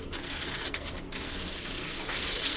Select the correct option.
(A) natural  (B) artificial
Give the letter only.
B